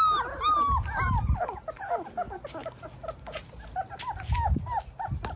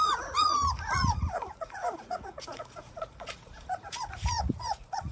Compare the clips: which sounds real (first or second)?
first